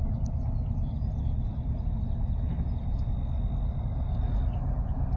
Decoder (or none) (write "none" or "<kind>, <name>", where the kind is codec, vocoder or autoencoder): none